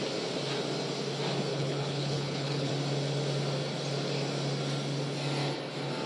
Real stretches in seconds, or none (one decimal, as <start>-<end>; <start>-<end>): 0.0-1.5; 2.7-6.1